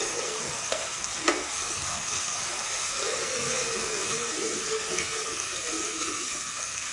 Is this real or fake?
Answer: fake